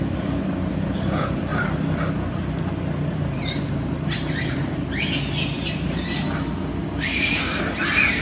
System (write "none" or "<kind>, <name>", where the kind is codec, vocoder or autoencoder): vocoder, BigVGAN v2